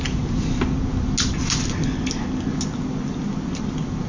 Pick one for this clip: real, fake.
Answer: real